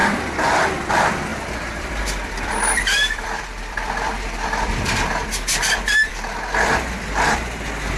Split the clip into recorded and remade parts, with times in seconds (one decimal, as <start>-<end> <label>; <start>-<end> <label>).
0.0-0.9 remade; 0.9-1.3 recorded; 1.3-6.1 remade; 6.1-8.0 recorded